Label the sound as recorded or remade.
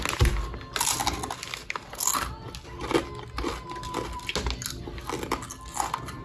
recorded